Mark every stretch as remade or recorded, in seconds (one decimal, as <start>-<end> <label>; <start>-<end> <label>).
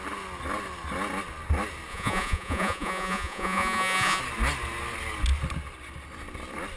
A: 0.0-1.9 recorded; 1.9-4.2 remade; 4.2-6.8 recorded